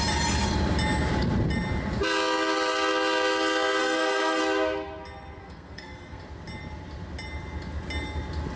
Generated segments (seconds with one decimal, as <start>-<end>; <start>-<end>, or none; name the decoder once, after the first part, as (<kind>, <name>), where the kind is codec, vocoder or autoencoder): 3.8-4.4 (codec, SNAC); 5.4-6.2